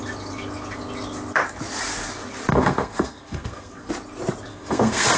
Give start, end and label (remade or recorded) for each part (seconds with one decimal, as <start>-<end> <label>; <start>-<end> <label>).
0.0-2.5 recorded; 2.5-3.9 remade; 3.9-4.5 recorded; 4.5-5.2 remade